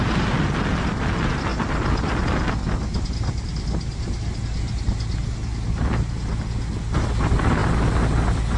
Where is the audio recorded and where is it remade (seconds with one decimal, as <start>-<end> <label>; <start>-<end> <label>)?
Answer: 0.0-8.6 recorded